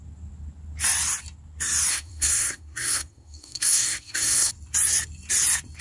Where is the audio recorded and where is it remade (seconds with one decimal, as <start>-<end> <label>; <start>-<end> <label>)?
0.0-1.9 recorded; 1.9-4.5 remade; 4.5-5.8 recorded